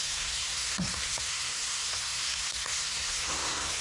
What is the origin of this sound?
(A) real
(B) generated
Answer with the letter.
B